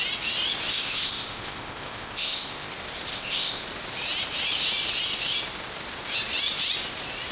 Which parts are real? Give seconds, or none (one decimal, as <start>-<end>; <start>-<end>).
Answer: 0.0-0.7; 2.7-3.1; 3.6-7.3